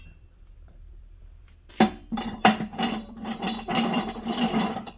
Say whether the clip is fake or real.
fake